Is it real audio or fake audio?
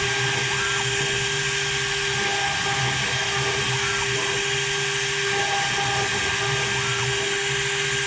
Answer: real